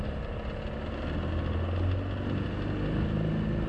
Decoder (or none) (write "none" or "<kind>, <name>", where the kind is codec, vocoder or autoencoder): none